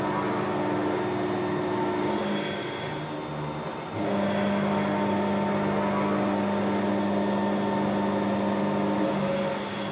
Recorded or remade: recorded